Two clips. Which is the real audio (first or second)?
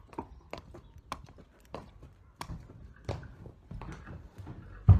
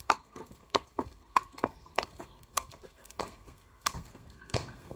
first